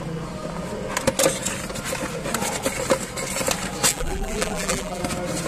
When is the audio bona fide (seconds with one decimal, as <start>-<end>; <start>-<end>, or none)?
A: 0.0-3.9; 5.0-5.5